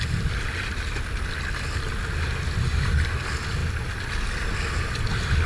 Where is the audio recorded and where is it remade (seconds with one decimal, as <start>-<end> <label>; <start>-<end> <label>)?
0.0-5.5 recorded